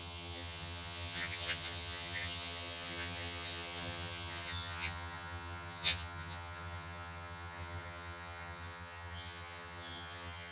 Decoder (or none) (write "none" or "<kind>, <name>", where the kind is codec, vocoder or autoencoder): vocoder, HiFi-GAN